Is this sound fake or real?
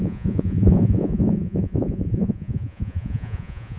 fake